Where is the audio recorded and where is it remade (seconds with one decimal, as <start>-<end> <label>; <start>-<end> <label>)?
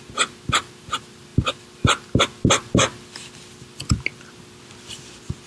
0.0-5.5 recorded